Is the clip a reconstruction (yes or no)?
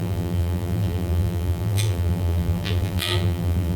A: yes